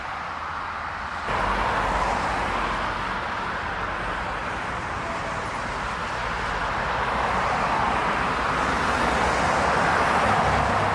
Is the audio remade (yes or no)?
no